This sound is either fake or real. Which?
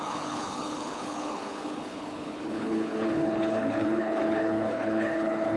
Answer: fake